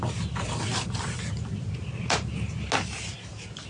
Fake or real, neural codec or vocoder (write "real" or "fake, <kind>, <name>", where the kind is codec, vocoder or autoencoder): real